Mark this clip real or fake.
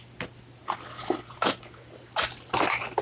real